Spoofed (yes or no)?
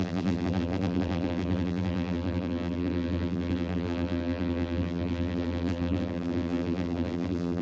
yes